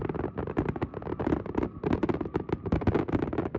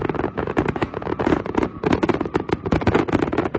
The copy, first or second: second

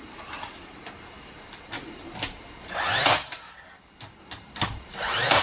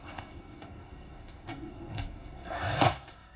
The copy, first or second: second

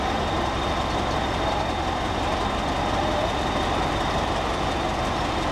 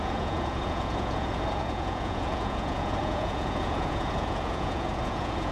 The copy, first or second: second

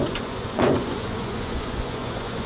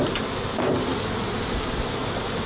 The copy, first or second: first